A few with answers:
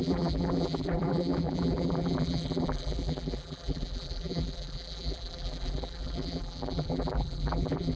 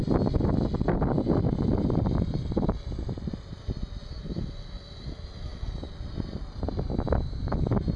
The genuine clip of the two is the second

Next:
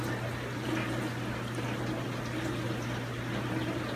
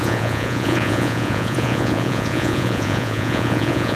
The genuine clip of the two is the first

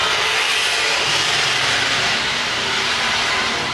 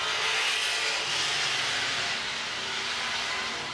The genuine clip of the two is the second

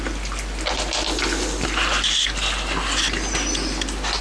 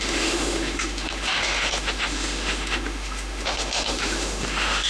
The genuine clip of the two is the first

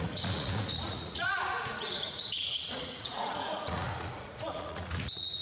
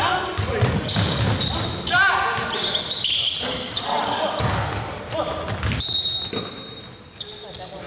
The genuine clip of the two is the second